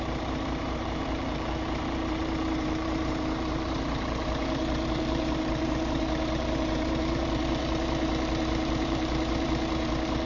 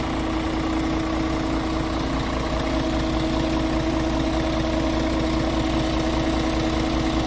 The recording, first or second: second